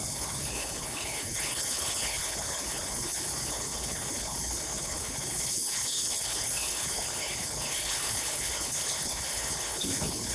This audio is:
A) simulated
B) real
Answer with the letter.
A